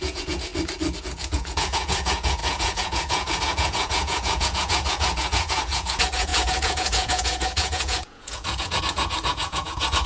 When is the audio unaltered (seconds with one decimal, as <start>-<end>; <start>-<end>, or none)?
0.5-1.0